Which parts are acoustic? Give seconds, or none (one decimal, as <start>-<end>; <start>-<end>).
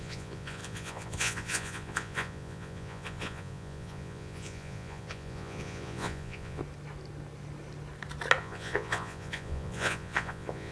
6.6-8.4